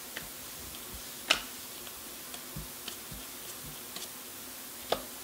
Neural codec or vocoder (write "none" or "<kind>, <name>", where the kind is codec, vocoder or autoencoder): none